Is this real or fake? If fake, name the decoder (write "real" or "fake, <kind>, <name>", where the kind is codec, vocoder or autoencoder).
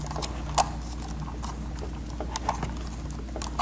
real